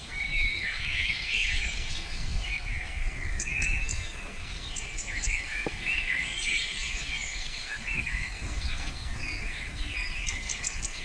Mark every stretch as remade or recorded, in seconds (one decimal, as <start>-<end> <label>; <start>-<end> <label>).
0.0-11.0 remade